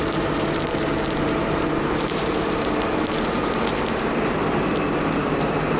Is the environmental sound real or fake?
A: fake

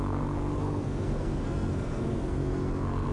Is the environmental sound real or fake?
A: fake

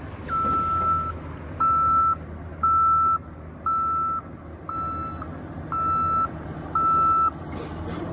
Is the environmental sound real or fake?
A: real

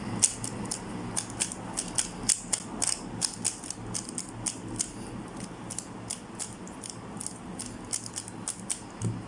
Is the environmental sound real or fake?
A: real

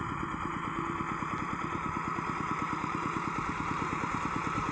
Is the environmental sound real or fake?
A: fake